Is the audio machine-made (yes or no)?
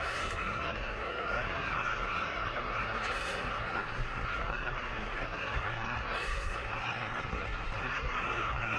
yes